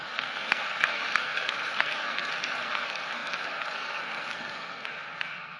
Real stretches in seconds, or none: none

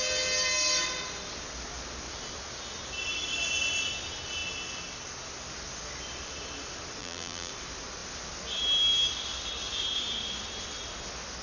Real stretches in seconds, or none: 0.0-7.0; 7.5-11.4

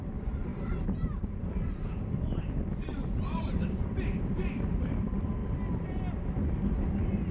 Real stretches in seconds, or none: 0.5-1.4; 5.4-6.7

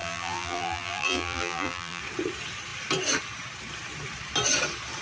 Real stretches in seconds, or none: 2.0-5.0

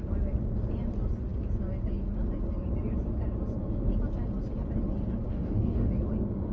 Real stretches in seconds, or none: 0.0-5.3; 5.9-6.5

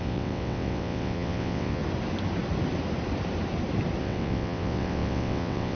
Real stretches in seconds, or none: 1.8-4.0

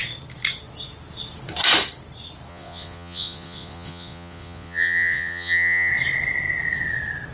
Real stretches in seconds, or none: 0.0-2.5; 5.9-7.3

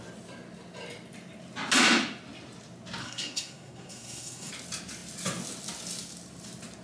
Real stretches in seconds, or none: 0.0-3.0; 4.5-6.8